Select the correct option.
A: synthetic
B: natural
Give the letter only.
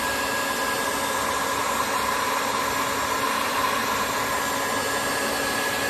B